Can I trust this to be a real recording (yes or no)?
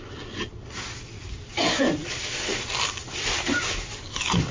yes